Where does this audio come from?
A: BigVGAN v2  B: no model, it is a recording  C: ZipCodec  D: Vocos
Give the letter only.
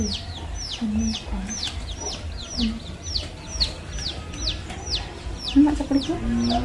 B